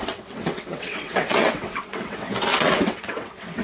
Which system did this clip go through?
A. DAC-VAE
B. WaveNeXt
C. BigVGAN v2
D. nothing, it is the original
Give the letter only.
B